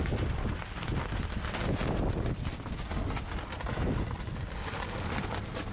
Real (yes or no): yes